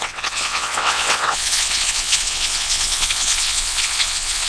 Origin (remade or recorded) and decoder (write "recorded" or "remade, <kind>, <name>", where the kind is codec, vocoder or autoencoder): remade, vocoder, WaveNeXt